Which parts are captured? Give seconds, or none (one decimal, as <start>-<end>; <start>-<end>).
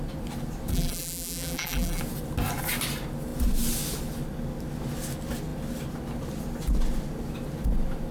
0.0-0.7; 2.0-8.1